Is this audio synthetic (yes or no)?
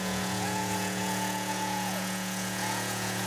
yes